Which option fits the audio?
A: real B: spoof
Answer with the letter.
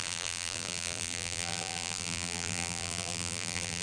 B